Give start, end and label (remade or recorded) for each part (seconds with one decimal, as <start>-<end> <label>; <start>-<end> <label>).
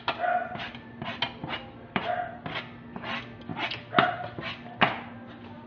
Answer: 0.0-1.4 recorded; 1.4-2.2 remade; 2.2-5.7 recorded